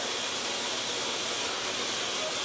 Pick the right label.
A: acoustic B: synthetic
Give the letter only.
A